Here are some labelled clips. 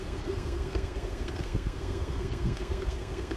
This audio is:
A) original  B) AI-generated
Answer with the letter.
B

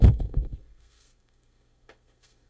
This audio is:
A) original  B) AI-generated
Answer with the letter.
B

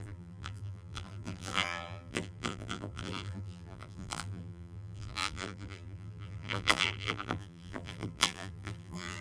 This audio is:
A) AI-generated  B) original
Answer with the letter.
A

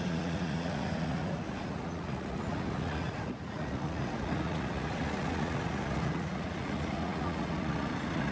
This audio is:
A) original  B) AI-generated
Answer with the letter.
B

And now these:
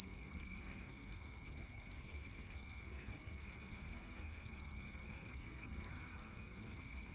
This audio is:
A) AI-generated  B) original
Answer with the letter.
A